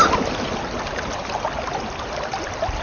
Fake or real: real